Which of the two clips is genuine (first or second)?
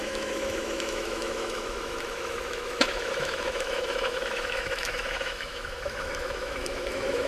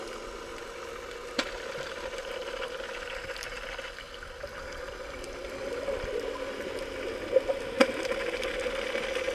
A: second